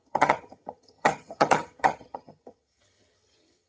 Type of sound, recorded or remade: remade